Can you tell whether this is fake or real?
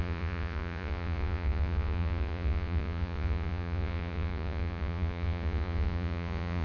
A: fake